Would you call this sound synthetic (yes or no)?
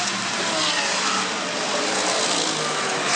no